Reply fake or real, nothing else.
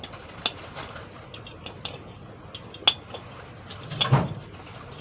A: real